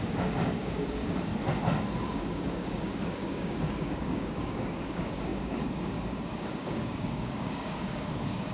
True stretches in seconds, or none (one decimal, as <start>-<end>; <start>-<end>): 1.3-2.0